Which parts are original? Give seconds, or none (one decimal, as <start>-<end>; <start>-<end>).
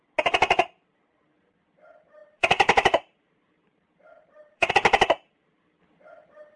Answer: 0.0-2.2; 4.7-6.6